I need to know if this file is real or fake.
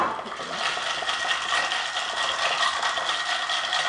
real